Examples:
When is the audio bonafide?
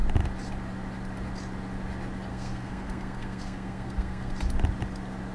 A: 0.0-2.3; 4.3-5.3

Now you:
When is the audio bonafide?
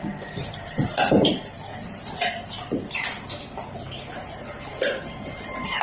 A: 1.7-5.2